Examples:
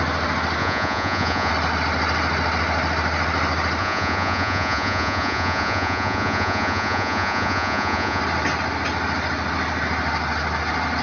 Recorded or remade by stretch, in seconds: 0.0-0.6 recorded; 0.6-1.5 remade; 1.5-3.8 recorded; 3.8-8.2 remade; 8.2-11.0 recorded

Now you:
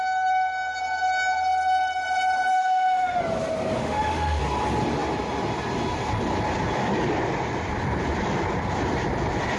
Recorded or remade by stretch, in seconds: 0.0-2.5 recorded; 2.5-3.2 remade; 3.2-3.8 recorded; 3.8-4.4 remade; 4.4-9.6 recorded

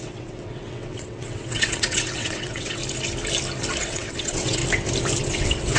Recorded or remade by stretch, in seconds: 0.0-2.8 remade; 2.8-3.8 recorded; 3.8-4.6 remade; 4.6-5.2 recorded; 5.2-5.8 remade

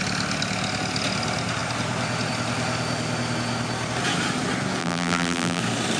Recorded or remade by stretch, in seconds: 0.0-4.8 recorded; 4.8-5.6 remade; 5.6-6.0 recorded

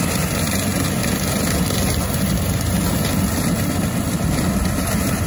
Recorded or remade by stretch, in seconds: 0.0-5.3 recorded

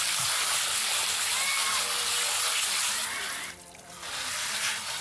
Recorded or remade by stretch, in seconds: 0.0-5.0 recorded